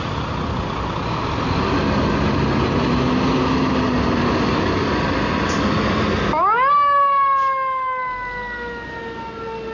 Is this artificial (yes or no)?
no